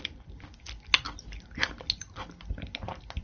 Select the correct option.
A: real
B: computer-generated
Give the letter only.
A